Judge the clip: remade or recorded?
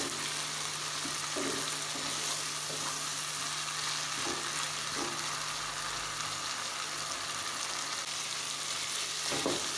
recorded